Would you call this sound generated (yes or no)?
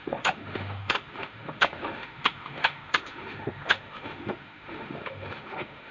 yes